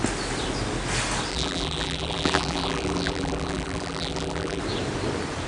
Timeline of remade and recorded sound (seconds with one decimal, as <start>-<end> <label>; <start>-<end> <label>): 0.0-1.3 recorded; 1.3-4.6 remade; 4.6-5.5 recorded